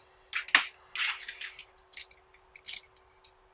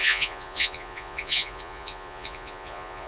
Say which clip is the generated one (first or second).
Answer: second